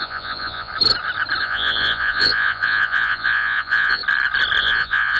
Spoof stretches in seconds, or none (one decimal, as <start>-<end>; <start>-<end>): 0.0-0.7; 1.4-4.0; 4.6-5.2